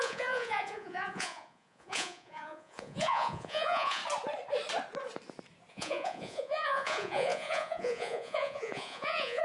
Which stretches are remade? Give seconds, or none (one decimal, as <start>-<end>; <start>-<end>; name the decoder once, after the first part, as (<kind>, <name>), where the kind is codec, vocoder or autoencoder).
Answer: 0.0-4.0 (vocoder, Vocos); 5.7-9.4